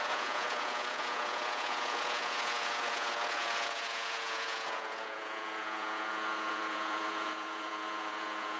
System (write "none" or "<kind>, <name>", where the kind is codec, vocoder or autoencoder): vocoder, Vocos